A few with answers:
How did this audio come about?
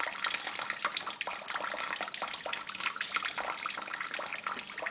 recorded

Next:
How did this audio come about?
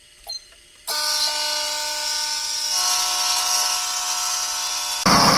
recorded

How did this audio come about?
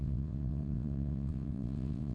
remade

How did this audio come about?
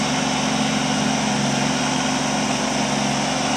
recorded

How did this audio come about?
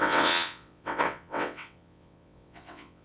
remade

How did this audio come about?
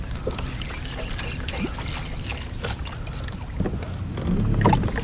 recorded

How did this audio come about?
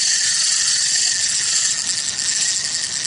recorded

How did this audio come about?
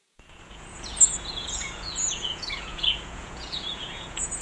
remade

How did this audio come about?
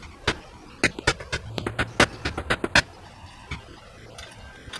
recorded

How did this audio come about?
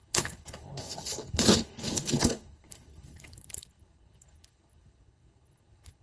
remade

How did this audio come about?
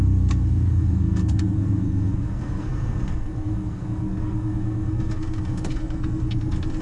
remade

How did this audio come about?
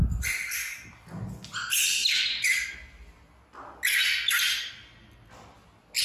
recorded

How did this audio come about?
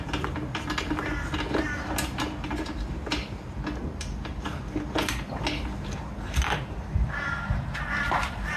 recorded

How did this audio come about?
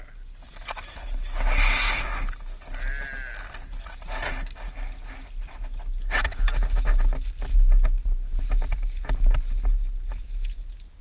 recorded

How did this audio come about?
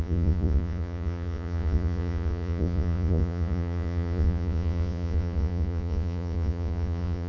remade